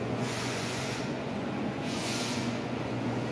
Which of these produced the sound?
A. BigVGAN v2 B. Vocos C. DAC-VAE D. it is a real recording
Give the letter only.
B